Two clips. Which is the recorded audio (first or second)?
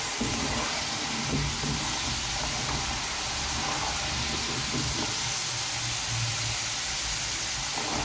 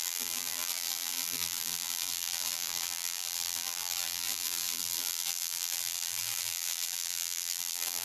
first